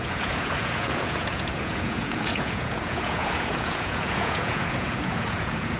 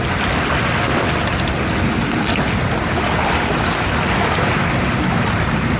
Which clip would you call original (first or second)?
second